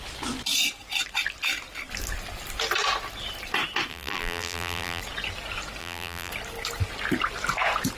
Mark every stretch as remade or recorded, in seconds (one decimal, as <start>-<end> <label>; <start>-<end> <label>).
0.0-3.9 recorded; 3.9-5.0 remade; 5.0-5.8 recorded; 5.8-6.3 remade; 6.3-8.0 recorded